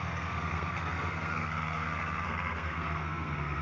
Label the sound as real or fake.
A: fake